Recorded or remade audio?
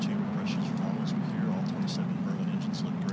recorded